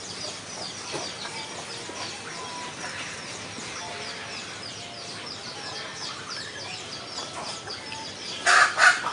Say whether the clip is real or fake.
real